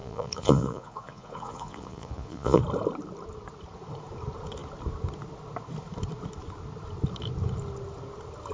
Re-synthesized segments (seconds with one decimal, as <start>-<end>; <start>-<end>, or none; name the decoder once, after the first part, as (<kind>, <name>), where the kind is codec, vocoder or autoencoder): 0.0-2.6 (vocoder, Vocos)